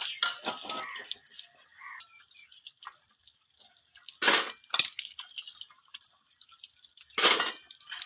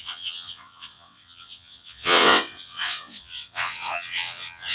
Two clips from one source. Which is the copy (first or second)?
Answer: second